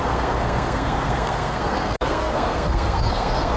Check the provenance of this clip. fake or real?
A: fake